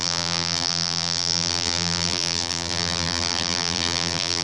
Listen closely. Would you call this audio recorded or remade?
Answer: remade